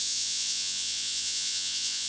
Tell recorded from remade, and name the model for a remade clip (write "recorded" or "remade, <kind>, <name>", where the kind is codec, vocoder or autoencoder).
remade, vocoder, Vocos